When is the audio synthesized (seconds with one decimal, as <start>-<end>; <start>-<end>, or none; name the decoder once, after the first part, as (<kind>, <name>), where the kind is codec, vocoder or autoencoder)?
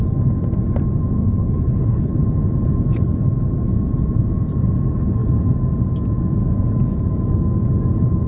1.2-2.1 (codec, HILCodec)